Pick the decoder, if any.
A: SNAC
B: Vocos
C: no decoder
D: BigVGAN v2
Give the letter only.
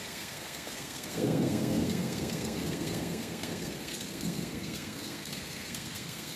A